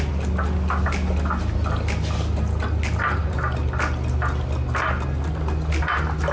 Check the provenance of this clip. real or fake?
real